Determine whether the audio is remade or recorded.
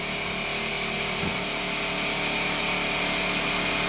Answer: recorded